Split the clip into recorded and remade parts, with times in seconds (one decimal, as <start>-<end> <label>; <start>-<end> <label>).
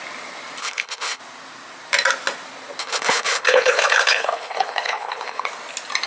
0.0-0.6 recorded; 0.6-1.2 remade; 1.2-2.8 recorded; 2.8-5.5 remade; 5.5-6.1 recorded